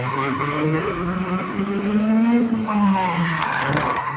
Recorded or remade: remade